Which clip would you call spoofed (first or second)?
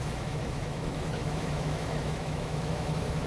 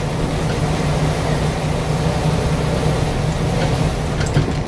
first